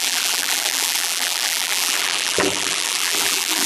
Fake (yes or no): yes